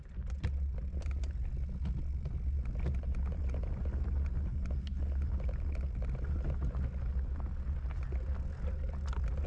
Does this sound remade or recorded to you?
recorded